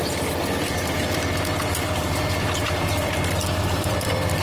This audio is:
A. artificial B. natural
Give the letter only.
A